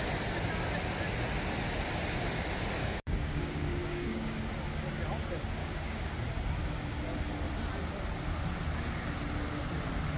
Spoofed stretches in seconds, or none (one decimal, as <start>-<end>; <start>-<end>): 2.8-4.5; 5.6-6.1